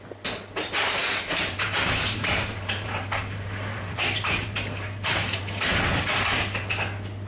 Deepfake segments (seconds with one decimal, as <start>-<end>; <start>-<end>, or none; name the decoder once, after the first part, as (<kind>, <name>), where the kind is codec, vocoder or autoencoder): 1.0-5.4 (vocoder, BigVGAN v2)